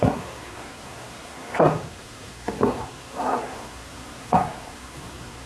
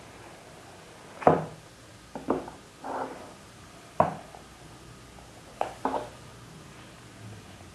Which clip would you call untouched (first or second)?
second